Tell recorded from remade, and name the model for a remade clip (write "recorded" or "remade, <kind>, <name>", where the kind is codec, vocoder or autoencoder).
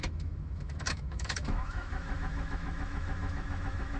remade, autoencoder, DAC-VAE